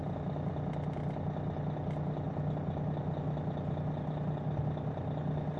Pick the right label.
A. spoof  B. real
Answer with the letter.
B